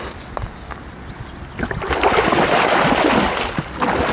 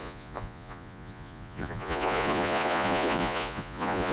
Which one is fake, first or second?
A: second